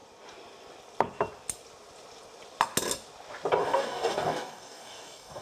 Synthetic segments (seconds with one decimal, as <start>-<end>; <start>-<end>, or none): 3.6-5.4